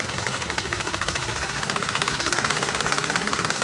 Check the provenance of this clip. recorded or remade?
remade